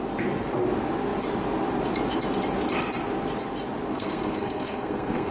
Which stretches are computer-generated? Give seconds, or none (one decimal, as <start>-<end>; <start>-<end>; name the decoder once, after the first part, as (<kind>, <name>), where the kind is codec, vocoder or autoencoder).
3.9-5.3 (codec, SNAC)